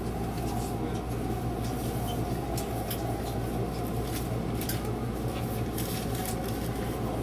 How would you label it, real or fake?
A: real